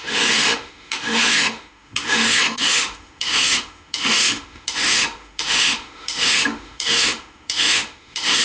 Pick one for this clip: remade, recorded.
remade